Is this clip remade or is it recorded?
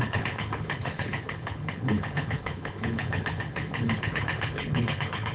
remade